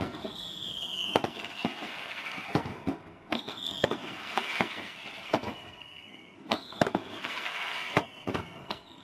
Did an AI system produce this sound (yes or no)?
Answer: yes